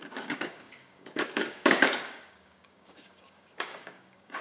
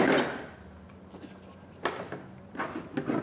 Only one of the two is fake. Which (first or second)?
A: first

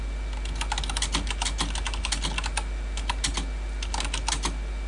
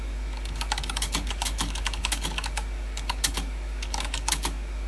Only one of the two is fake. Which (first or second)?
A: second